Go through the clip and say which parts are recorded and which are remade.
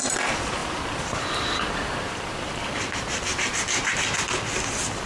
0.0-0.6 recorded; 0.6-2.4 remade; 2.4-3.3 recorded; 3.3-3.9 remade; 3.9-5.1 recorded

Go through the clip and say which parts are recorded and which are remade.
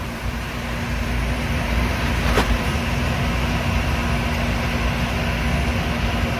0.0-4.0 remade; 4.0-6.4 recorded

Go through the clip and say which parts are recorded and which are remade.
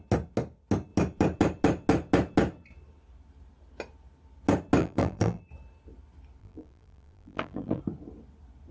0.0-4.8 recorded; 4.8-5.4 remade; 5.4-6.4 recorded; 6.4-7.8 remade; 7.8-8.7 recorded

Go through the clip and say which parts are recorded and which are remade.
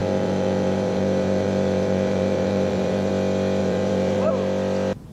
0.0-3.1 remade; 3.1-3.6 recorded; 3.6-4.3 remade; 4.3-5.1 recorded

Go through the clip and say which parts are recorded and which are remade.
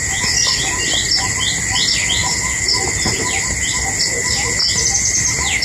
0.0-5.6 recorded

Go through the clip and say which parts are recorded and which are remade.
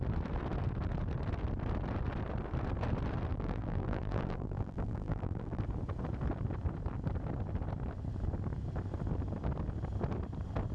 0.0-3.3 recorded; 3.3-5.6 remade; 5.6-10.7 recorded